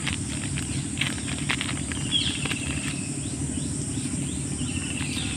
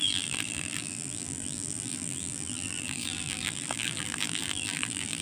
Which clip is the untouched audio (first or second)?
first